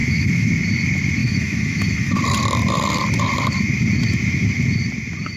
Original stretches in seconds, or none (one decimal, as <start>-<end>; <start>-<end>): 0.5-1.2; 2.1-5.4